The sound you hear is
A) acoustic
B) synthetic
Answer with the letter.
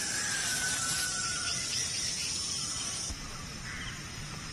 B